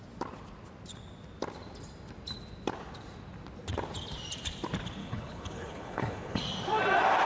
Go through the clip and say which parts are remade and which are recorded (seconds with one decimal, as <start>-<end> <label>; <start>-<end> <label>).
0.0-5.0 recorded; 5.0-6.4 remade; 6.4-7.2 recorded